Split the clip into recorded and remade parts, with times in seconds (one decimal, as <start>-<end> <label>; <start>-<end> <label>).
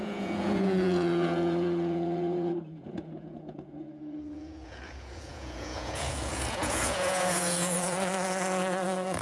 0.0-9.2 remade